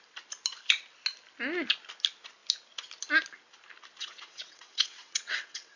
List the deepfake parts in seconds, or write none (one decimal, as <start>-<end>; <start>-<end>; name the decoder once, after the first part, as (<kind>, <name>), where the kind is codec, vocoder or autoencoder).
4.0-5.8 (vocoder, WaveNeXt)